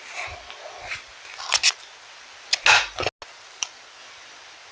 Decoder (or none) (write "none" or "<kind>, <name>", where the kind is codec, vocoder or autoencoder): none